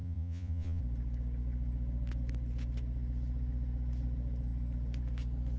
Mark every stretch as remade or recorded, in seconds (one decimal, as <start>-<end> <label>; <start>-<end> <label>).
0.0-0.8 remade; 0.8-5.6 recorded